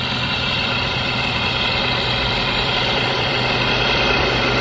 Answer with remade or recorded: remade